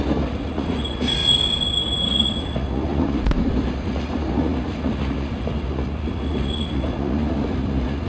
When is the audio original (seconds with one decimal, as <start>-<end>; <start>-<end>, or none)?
1.2-1.8